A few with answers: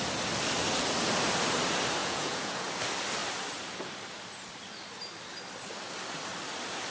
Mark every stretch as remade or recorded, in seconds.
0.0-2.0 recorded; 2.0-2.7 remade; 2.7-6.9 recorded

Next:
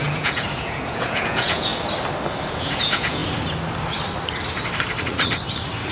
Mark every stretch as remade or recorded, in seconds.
0.0-1.7 remade; 1.7-2.5 recorded; 2.5-3.2 remade; 3.2-5.9 recorded

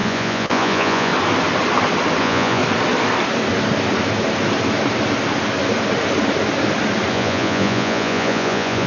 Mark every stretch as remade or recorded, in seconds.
0.0-1.1 remade; 1.1-2.2 recorded; 2.2-2.6 remade; 2.6-7.1 recorded; 7.1-8.9 remade